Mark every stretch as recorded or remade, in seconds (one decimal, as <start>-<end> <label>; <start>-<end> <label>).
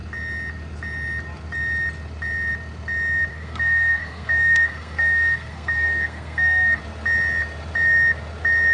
0.0-3.3 recorded; 3.3-6.8 remade; 6.8-8.7 recorded